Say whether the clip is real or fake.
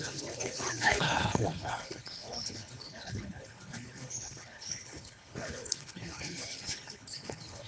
fake